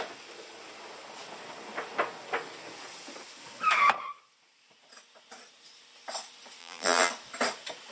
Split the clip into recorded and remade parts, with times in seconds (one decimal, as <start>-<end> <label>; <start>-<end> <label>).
0.0-6.6 recorded; 6.6-7.1 remade; 7.1-7.9 recorded